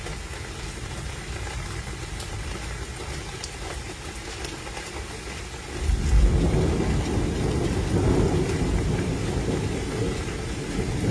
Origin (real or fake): real